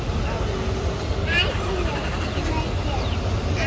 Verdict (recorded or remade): recorded